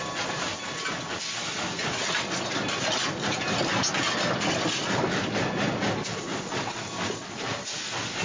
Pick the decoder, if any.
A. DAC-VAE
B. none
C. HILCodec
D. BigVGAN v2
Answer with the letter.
B